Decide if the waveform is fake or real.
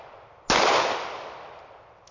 real